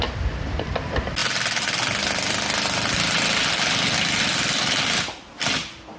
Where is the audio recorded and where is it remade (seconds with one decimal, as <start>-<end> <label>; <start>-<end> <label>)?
0.0-6.0 recorded